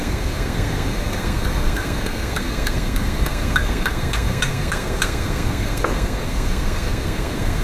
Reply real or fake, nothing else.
fake